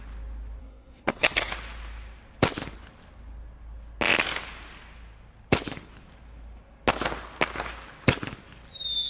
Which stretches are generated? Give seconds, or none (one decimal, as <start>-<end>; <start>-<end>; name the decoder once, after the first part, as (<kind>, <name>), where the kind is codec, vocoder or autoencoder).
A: 0.6-1.5 (codec, SNAC)